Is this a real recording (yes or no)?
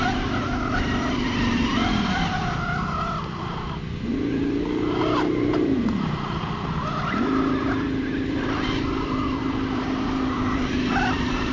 no